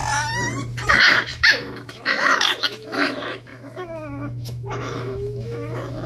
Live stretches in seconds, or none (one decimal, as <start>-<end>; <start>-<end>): 0.0-0.9